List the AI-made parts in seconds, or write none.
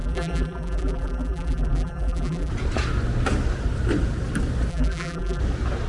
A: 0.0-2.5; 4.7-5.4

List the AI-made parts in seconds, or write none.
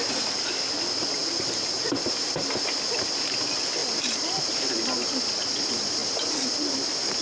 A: 3.8-4.7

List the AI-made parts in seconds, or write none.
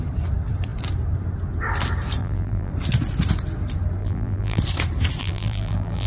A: 2.2-2.7; 4.0-4.6; 5.2-6.1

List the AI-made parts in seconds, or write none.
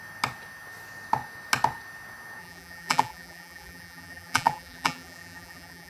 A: 2.4-5.9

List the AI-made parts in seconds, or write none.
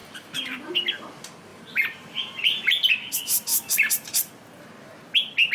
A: 0.0-0.7; 1.5-2.9; 3.5-4.3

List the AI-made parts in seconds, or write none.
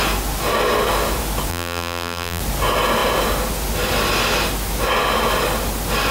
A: 1.5-2.4